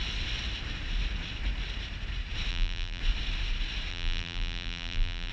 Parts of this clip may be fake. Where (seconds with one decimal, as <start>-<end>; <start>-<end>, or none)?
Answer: 2.5-3.0; 3.9-5.3